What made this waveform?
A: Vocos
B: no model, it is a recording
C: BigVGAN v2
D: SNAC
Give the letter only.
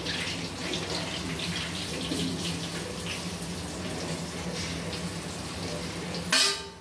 B